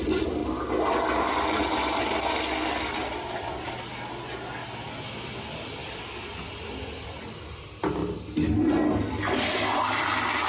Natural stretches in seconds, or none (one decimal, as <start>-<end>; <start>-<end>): 0.0-10.5